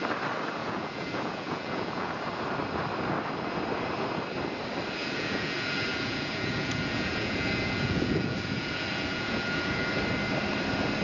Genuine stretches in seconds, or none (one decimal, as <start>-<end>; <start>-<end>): 0.0-0.6; 2.1-5.0; 10.0-11.0